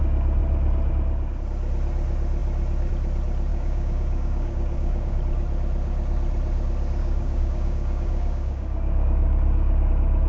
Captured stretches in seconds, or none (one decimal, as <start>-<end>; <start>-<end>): 0.0-3.5; 5.2-7.0; 9.9-10.3